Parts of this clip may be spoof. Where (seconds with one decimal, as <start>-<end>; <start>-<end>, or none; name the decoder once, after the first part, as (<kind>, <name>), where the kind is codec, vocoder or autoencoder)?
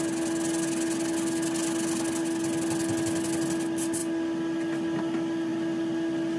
none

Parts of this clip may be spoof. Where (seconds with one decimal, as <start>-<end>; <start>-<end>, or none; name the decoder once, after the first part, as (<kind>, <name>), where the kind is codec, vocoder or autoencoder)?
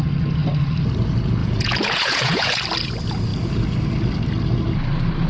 1.4-2.6 (vocoder, Vocos)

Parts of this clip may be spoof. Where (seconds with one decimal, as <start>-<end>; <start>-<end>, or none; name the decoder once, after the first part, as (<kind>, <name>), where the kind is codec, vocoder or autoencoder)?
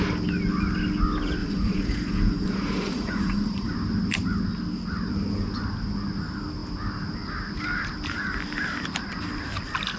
1.4-3.7 (vocoder, Vocos)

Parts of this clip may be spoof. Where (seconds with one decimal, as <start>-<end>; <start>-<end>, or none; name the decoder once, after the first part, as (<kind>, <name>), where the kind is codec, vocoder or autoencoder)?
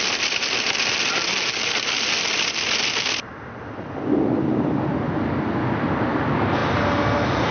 none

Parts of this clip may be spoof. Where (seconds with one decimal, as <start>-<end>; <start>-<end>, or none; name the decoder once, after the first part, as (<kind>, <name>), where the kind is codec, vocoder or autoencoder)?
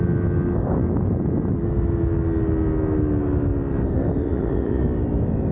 4.2-4.8 (vocoder, Vocos)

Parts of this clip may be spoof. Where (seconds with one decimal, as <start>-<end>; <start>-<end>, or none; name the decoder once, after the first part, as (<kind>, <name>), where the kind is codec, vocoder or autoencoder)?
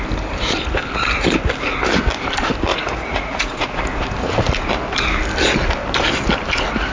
2.7-3.8 (vocoder, Vocos)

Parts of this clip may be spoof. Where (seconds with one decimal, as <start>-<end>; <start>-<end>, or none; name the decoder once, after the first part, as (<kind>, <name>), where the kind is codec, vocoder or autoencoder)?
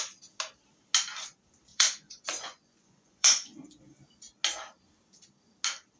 1.7-3.8 (vocoder, Vocos)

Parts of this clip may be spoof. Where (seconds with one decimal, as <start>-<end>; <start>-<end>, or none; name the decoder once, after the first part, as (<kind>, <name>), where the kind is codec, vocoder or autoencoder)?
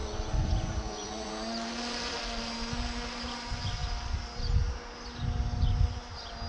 0.0-1.3 (vocoder, Vocos)